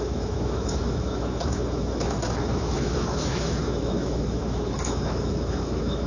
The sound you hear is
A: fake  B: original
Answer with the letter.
A